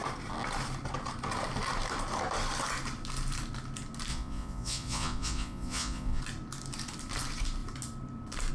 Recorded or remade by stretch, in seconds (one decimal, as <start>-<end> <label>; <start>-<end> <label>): 0.0-4.1 recorded; 4.1-6.2 remade; 6.2-8.5 recorded